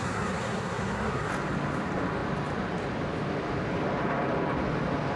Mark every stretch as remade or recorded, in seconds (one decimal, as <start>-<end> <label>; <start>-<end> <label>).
0.0-1.3 remade; 1.3-5.2 recorded